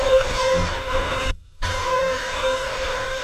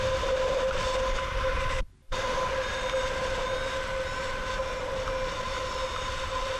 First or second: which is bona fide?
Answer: second